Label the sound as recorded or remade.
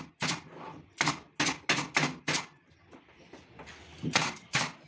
recorded